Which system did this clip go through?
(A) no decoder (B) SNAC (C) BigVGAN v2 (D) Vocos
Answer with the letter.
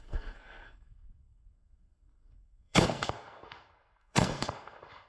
B